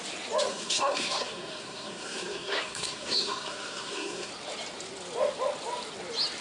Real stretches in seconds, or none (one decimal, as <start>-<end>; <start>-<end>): 0.0-0.5; 4.3-6.4